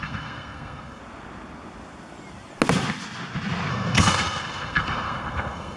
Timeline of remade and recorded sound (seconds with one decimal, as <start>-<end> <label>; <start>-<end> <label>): 0.0-1.0 remade; 1.0-3.7 recorded; 3.7-5.8 remade